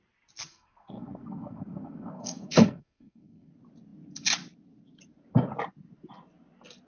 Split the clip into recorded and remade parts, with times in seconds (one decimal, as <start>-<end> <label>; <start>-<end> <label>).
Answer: 0.0-0.5 recorded; 0.5-3.5 remade; 3.5-6.9 recorded